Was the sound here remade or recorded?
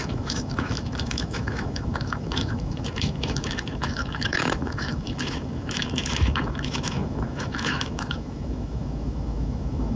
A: remade